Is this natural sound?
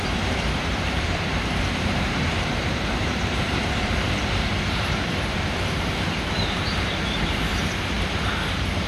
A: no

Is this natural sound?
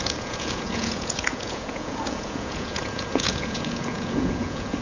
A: no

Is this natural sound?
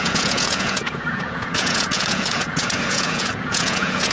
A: no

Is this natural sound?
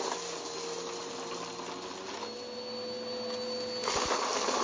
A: yes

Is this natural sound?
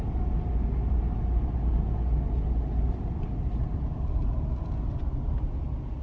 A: yes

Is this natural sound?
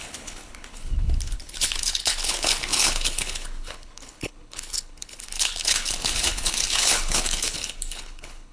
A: no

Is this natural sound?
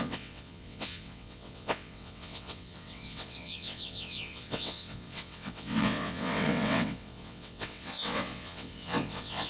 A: no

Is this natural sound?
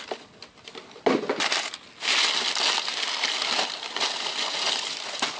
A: yes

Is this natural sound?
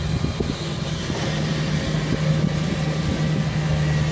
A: yes